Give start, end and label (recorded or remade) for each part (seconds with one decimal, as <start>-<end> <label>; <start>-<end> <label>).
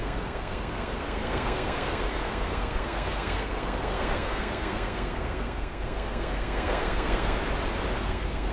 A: 0.0-7.4 remade; 7.4-8.0 recorded; 8.0-8.5 remade